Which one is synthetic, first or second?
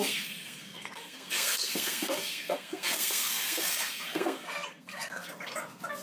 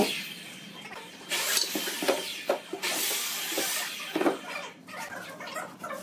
first